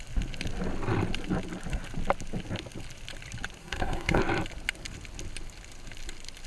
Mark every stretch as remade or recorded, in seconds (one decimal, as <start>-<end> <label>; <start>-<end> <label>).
0.0-3.6 recorded; 3.6-4.2 remade; 4.2-6.5 recorded